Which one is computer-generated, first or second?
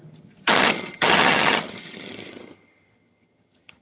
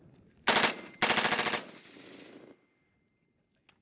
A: first